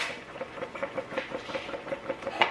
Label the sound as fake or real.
fake